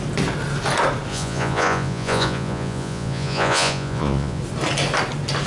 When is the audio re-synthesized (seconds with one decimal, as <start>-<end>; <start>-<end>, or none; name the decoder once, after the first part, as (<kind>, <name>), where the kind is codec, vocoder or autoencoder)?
1.1-4.4 (vocoder, Vocos)